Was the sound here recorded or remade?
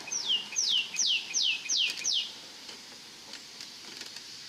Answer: remade